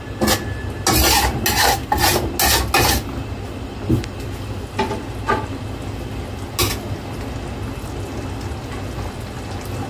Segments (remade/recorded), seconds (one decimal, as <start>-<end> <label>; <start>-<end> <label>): 0.0-9.9 recorded